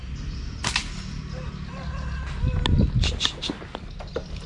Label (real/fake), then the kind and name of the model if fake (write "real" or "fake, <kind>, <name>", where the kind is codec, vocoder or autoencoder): real